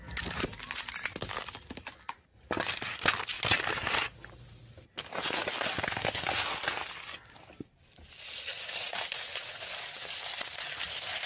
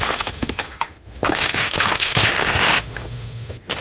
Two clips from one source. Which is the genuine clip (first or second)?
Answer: first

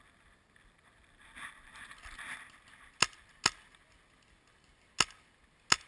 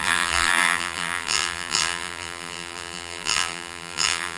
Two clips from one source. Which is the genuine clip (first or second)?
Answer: first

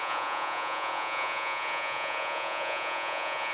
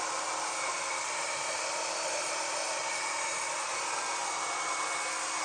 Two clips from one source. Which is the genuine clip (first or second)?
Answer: second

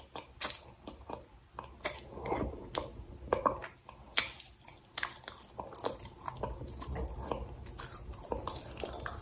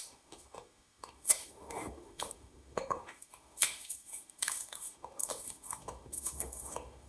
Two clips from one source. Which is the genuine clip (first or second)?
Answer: first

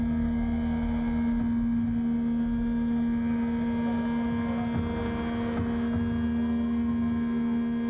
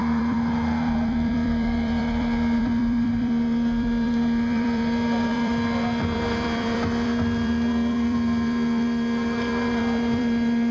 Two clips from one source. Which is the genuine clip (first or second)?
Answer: first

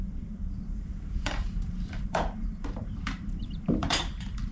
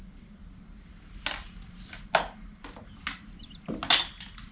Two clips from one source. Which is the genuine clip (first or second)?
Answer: second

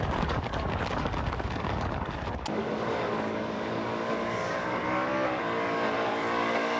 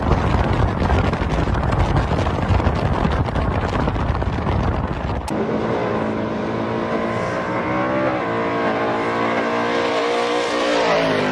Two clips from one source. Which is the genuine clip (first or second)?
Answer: second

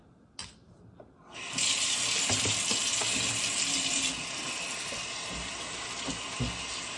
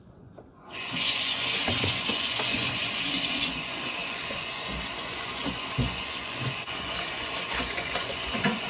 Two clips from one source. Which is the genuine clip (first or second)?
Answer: first